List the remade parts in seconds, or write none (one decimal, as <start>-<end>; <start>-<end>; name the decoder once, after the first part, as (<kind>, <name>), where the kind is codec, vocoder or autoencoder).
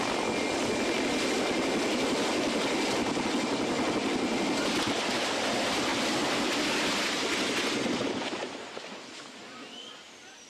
none